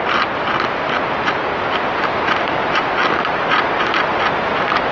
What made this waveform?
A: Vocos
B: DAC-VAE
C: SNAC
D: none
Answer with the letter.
D